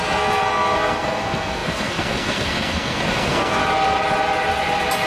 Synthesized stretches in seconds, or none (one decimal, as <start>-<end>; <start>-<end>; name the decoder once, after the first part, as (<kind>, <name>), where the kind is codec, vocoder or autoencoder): 0.0-3.6 (codec, SNAC)